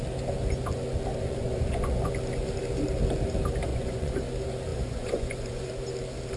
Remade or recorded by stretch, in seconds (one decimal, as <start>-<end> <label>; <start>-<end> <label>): 0.0-1.1 recorded; 1.1-2.1 remade; 2.1-3.7 recorded; 3.7-4.2 remade; 4.2-4.7 recorded; 4.7-5.7 remade; 5.7-6.4 recorded